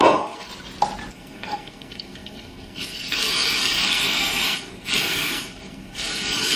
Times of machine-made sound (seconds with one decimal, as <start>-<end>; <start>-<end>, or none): 0.0-0.5; 1.1-6.6